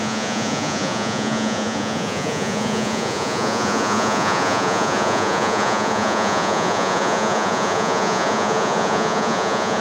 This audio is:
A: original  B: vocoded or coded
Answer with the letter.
B